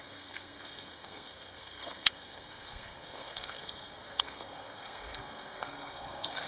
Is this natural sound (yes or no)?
no